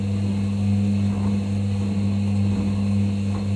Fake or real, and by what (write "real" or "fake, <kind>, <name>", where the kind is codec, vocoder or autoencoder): real